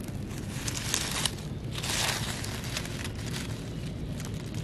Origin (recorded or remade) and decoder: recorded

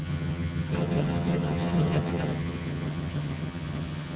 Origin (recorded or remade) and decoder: remade, vocoder, HiFi-GAN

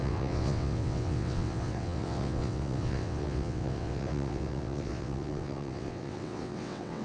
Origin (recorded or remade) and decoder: remade, vocoder, WaveNeXt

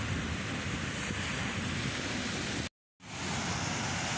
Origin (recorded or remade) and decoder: recorded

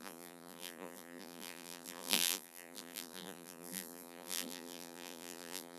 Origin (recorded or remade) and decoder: remade, vocoder, BigVGAN v2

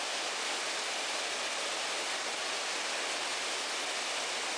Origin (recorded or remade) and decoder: recorded